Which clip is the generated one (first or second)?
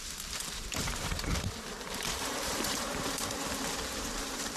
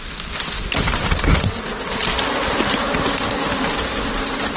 first